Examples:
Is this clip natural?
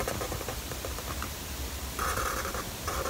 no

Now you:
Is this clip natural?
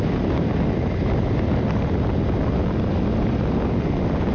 yes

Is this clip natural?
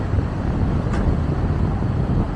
yes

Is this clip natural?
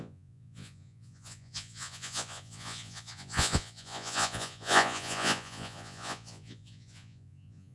no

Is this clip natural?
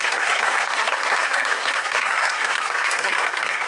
no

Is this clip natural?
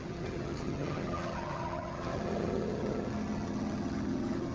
no